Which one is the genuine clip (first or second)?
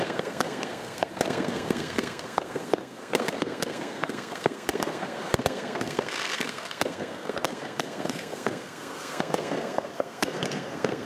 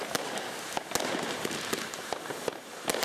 second